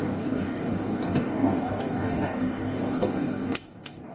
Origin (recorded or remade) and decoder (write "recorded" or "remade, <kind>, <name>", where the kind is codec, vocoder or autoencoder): remade, codec, DAC